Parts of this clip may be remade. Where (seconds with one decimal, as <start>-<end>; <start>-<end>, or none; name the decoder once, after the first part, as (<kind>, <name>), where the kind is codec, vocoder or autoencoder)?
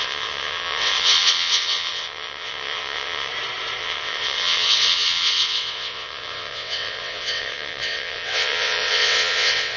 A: 0.0-3.3 (vocoder, WaveNeXt); 3.8-9.8